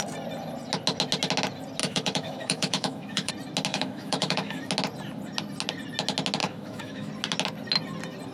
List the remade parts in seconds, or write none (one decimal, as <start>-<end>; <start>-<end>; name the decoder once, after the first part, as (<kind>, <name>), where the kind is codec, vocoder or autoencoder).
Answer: 1.8-3.3 (autoencoder, DAC-VAE); 3.7-4.7; 6.4-7.1